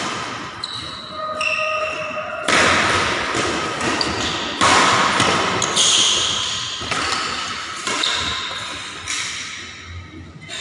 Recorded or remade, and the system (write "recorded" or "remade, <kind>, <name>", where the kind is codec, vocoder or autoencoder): recorded